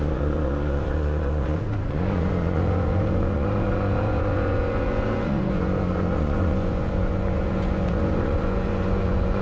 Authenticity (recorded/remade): remade